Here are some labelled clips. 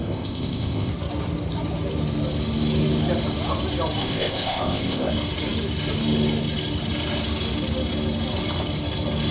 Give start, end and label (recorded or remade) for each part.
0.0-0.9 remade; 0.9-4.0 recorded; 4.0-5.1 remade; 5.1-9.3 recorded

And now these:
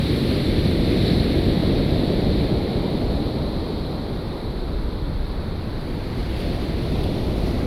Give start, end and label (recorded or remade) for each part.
0.0-1.6 recorded; 1.6-5.6 remade; 5.6-6.2 recorded; 6.2-6.8 remade; 6.8-7.7 recorded